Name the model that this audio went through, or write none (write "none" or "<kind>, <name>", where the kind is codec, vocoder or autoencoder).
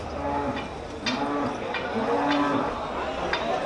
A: none